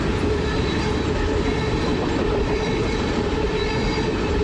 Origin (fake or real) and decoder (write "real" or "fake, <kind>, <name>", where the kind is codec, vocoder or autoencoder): fake, vocoder, BigVGAN v2